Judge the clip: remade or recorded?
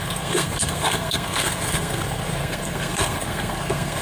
remade